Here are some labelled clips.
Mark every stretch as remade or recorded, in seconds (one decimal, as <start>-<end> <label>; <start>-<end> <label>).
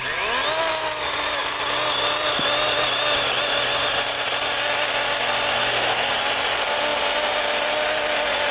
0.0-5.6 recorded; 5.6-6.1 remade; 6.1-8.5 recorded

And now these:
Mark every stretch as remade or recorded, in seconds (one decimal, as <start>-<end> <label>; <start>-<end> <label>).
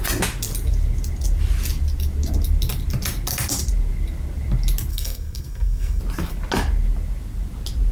0.0-4.9 recorded; 4.9-6.0 remade; 6.0-7.9 recorded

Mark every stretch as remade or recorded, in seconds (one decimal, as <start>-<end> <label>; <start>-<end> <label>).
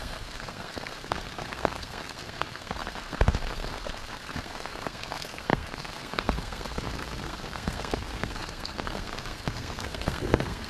0.0-10.7 remade